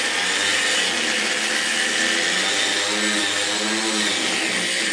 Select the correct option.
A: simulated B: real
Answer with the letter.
B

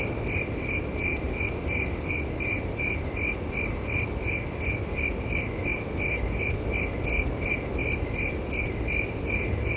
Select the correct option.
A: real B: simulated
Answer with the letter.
A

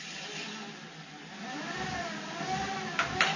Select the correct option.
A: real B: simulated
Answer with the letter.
A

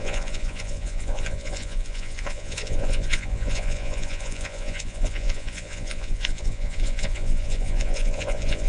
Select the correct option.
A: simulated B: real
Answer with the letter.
A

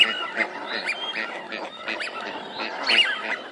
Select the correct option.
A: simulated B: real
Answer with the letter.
B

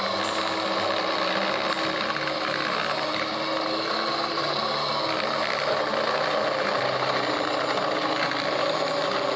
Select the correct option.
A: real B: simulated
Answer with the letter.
A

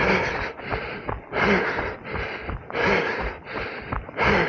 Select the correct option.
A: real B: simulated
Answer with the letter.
A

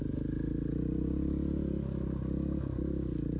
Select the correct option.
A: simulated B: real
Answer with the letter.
B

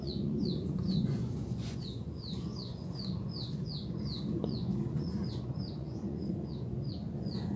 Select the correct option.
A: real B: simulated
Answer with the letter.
B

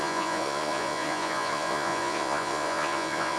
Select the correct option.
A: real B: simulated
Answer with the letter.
B